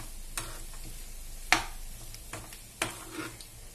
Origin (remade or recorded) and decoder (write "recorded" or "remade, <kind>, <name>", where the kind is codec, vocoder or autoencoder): recorded